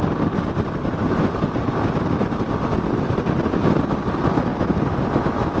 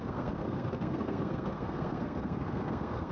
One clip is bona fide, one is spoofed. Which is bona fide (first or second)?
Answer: first